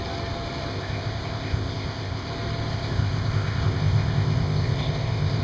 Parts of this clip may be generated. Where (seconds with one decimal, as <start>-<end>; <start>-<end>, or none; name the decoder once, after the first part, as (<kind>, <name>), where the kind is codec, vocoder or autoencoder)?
0.7-2.3 (codec, ZipCodec); 2.7-5.4